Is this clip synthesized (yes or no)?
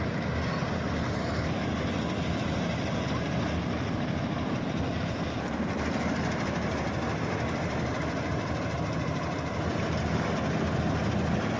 no